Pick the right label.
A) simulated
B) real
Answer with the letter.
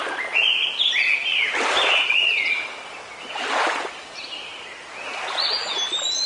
B